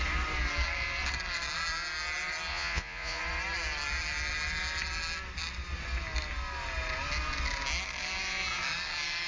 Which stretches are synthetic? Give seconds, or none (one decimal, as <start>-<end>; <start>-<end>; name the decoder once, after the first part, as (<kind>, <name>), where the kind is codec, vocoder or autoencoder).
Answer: 2.5-3.2 (vocoder, Vocos)